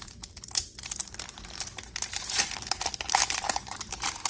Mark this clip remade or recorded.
remade